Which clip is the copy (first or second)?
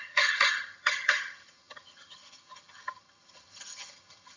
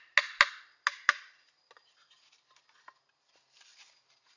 first